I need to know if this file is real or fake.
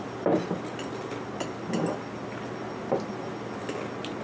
real